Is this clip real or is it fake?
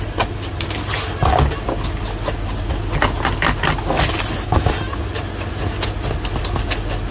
real